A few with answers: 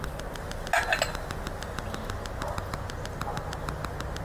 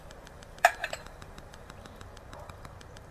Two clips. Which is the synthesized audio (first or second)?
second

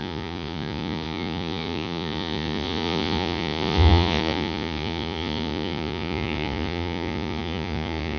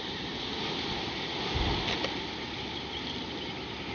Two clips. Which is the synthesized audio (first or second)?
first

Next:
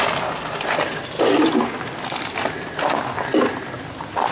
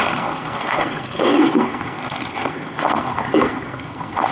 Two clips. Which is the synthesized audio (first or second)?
second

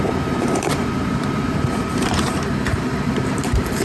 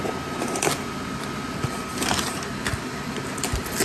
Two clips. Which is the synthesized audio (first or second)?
first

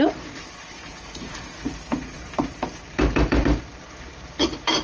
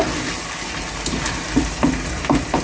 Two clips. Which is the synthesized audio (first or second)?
first